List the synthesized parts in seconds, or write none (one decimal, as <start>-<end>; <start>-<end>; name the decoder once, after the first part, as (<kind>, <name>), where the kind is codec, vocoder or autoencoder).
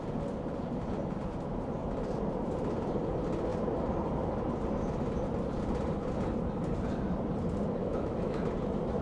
7.8-8.4 (autoencoder, DAC-VAE)